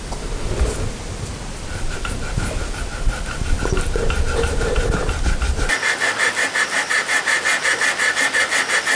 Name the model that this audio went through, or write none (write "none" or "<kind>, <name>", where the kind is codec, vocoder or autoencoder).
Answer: none